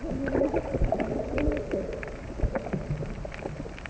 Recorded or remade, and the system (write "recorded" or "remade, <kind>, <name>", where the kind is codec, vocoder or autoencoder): recorded